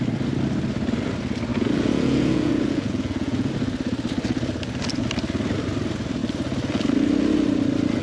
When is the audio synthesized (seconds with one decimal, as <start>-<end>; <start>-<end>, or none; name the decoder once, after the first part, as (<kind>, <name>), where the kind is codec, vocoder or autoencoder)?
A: 1.5-3.5 (vocoder, Vocos)